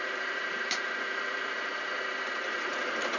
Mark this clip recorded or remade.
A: remade